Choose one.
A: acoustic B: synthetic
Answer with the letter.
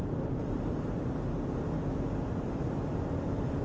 A